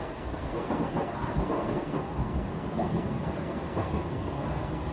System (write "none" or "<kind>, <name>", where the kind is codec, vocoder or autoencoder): codec, SNAC